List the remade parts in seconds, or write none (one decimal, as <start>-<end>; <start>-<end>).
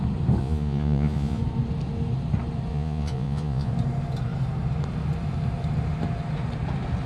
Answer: 0.4-1.4; 2.7-3.7